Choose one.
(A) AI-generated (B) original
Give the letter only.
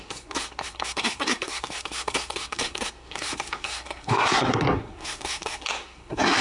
A